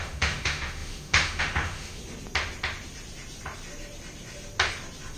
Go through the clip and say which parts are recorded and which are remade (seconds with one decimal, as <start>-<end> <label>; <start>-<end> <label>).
0.0-2.0 remade; 2.0-5.2 recorded